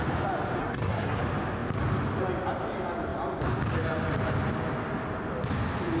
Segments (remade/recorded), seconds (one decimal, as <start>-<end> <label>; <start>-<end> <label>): 0.0-0.6 recorded; 0.6-1.2 remade; 1.2-6.0 recorded